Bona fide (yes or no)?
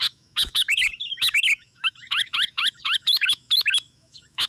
no